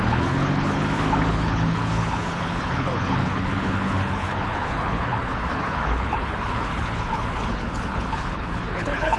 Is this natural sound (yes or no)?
no